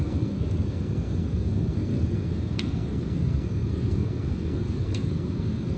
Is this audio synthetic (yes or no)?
yes